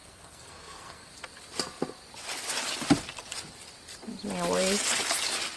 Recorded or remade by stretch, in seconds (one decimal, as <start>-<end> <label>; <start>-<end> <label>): 0.0-1.1 remade; 1.1-5.6 recorded